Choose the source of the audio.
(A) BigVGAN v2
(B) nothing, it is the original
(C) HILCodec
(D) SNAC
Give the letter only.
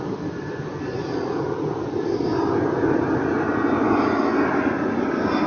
B